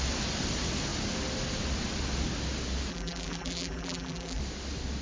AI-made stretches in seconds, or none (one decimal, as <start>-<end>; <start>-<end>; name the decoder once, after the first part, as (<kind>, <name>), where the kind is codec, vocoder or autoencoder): 2.9-4.4 (vocoder, BigVGAN v2)